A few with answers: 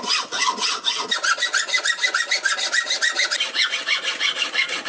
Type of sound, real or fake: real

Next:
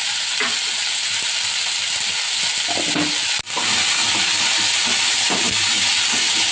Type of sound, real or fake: real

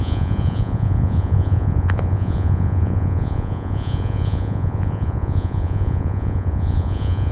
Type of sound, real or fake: fake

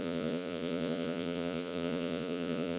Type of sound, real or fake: fake